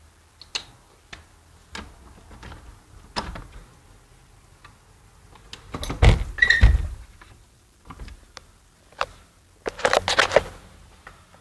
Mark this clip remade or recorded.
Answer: recorded